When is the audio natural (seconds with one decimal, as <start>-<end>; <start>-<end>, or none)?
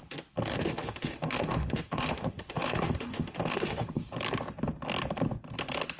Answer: 0.0-0.5; 4.1-6.0